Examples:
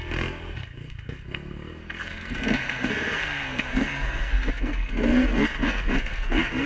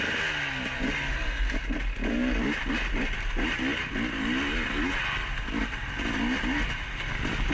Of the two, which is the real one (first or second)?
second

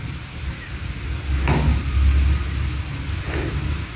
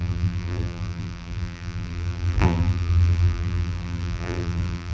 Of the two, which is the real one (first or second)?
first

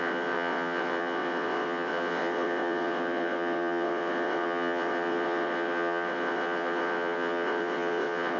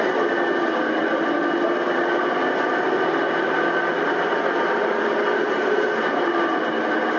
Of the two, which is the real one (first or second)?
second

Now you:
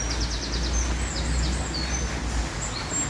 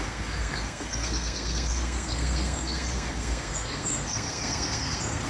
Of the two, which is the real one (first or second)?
first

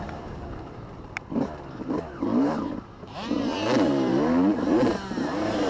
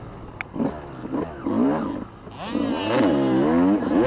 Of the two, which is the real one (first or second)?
second